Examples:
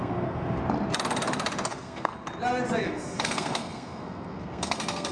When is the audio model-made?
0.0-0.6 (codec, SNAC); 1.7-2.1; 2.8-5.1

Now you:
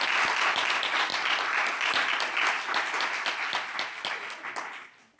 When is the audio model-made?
none

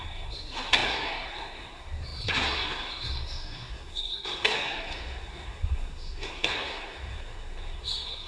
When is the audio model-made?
0.0-8.3 (codec, SNAC)

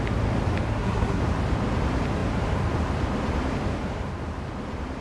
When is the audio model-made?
0.7-1.2 (codec, SNAC)

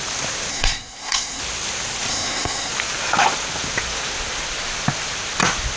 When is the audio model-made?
0.5-1.4 (codec, SNAC); 2.1-2.7

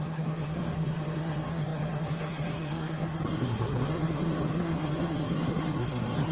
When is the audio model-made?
0.0-6.3 (codec, SNAC)

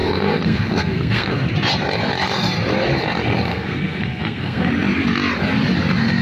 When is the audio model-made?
0.0-1.5 (codec, SNAC); 3.5-4.7